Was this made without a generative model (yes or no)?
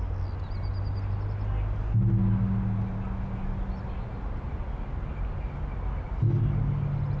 yes